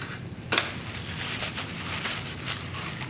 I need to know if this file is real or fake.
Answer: real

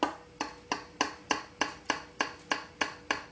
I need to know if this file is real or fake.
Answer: real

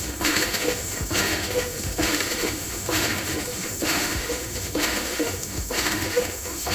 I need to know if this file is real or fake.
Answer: fake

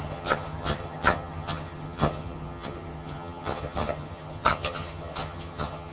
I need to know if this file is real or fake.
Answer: fake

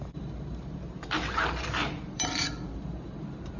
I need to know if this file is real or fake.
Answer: fake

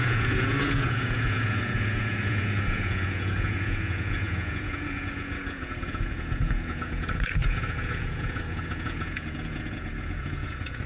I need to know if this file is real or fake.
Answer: fake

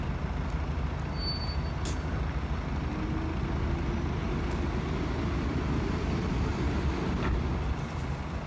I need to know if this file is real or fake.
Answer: real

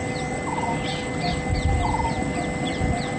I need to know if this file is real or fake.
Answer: real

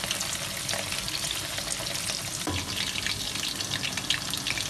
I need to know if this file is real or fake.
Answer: real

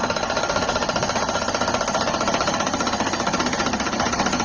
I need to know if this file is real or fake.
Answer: real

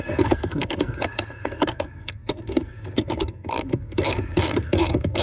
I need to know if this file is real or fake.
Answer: fake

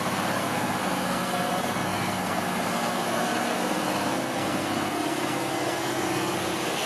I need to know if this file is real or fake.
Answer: fake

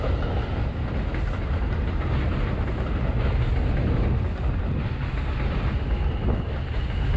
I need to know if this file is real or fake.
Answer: real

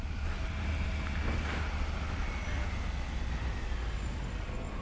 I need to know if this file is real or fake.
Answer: real